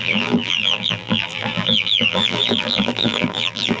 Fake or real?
fake